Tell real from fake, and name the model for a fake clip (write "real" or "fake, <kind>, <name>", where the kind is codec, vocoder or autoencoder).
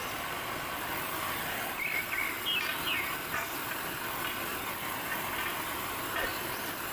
real